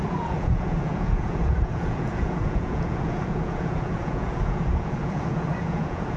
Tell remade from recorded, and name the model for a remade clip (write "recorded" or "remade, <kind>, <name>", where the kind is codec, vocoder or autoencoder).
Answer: remade, vocoder, Vocos